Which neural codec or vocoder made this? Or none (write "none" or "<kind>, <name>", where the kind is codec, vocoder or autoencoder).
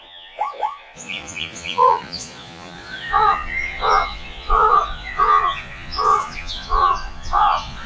vocoder, Vocos